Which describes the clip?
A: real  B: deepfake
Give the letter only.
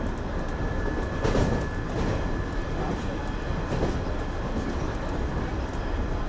A